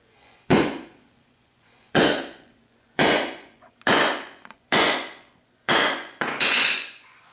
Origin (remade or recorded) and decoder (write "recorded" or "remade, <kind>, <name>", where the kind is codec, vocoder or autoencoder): remade, vocoder, Vocos